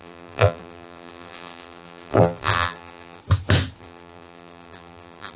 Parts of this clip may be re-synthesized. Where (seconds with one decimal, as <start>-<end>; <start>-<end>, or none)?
0.0-3.2; 3.8-5.4